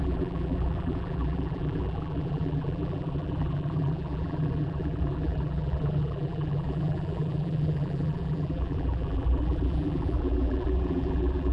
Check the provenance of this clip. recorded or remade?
remade